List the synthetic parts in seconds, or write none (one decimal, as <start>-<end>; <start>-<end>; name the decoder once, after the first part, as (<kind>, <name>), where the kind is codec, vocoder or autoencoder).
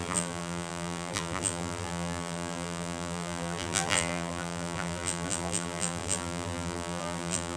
0.0-7.6 (vocoder, BigVGAN v2)